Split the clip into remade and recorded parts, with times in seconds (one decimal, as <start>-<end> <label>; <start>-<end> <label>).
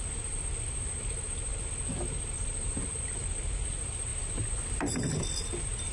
0.0-5.9 recorded